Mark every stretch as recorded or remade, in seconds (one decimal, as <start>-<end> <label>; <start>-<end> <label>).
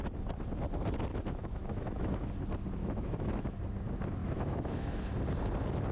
0.0-1.1 recorded; 1.1-2.3 remade; 2.3-2.8 recorded; 2.8-3.4 remade; 3.4-4.2 recorded; 4.2-5.0 remade; 5.0-5.9 recorded